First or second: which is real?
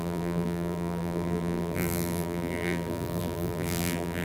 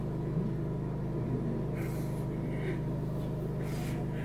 second